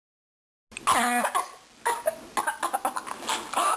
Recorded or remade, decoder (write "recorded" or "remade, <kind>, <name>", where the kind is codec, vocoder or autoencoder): recorded